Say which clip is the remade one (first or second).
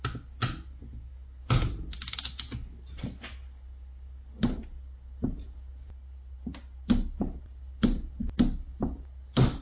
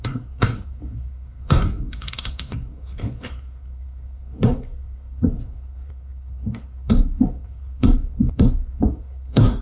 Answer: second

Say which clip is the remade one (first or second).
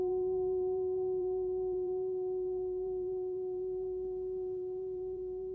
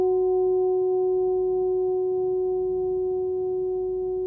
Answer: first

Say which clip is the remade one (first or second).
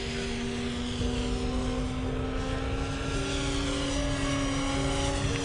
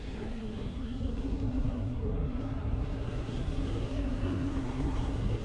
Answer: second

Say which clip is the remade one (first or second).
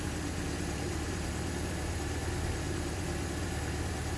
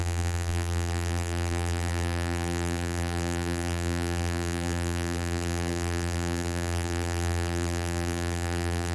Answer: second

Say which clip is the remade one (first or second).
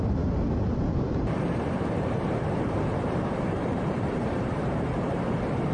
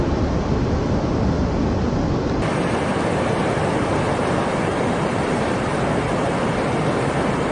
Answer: first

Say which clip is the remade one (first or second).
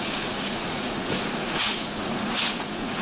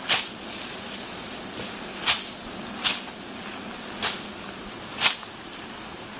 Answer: first